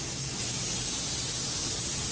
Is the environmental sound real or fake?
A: real